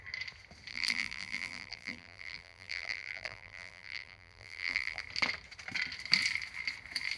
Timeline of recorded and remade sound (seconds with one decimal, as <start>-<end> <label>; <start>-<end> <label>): 0.0-0.7 recorded; 0.7-5.0 remade; 5.0-7.2 recorded